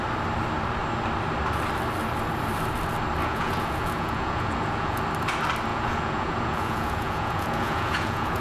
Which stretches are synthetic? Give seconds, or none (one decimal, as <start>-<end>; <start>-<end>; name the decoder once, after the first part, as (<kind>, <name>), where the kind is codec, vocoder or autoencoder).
3.2-5.0 (vocoder, Vocos); 5.7-8.4